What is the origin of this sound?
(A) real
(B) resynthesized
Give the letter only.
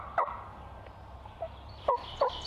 A